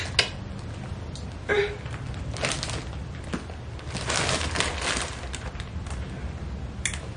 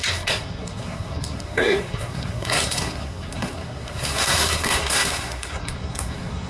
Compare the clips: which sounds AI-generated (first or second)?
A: second